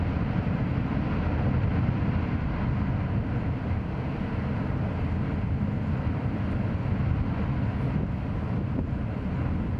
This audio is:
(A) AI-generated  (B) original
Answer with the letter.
B